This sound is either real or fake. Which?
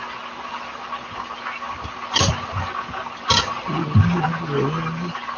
real